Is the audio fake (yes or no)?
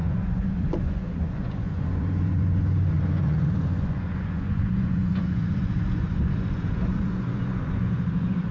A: yes